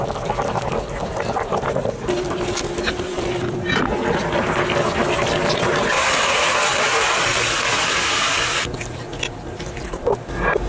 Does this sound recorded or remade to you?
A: recorded